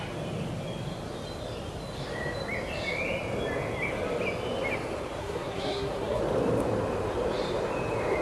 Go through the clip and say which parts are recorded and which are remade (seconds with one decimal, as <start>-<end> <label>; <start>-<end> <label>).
0.0-5.2 recorded; 5.2-6.2 remade; 6.2-8.2 recorded